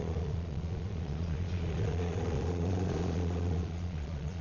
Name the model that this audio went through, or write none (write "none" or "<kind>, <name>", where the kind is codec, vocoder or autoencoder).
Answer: vocoder, Vocos